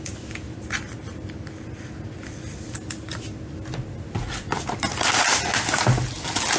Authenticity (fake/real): real